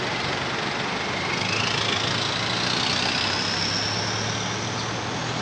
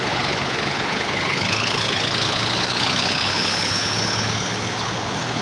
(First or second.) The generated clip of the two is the second